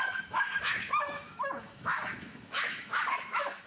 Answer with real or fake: fake